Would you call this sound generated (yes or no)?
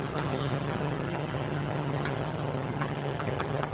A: yes